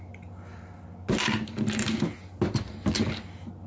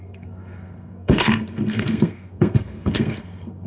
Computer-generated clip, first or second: second